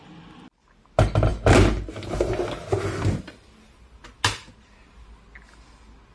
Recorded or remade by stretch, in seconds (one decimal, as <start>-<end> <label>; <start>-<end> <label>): 0.0-6.1 recorded